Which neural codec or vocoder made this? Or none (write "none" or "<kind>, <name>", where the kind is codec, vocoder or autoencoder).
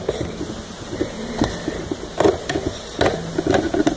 none